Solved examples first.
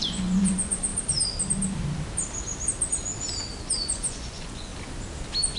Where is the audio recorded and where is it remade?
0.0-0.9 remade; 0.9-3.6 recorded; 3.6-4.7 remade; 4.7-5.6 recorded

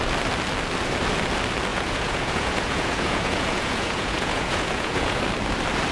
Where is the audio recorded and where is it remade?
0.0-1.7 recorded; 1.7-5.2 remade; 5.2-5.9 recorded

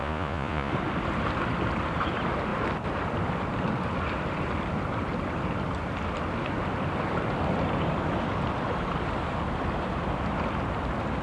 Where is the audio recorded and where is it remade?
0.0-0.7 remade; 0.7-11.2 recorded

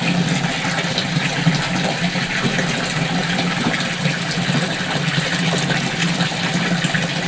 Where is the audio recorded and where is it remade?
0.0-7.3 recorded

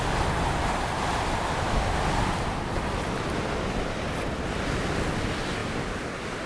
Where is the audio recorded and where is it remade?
0.0-6.5 recorded